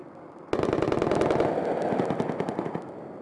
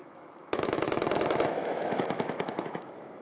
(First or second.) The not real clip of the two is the second